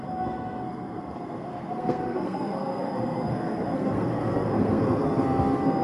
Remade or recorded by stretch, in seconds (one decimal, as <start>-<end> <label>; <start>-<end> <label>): 0.0-5.8 remade